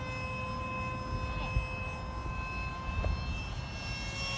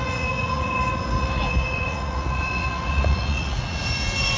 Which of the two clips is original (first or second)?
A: first